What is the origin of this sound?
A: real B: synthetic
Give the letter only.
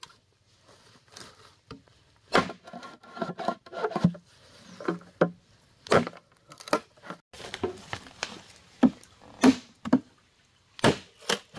A